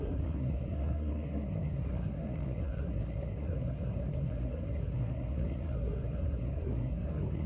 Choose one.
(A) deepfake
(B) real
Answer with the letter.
A